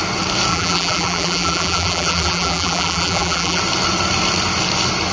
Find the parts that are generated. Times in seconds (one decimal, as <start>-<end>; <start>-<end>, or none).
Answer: 0.5-3.6

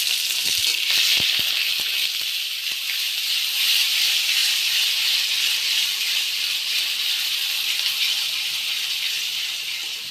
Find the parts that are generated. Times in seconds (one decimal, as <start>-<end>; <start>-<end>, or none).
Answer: 0.0-4.4; 5.3-10.1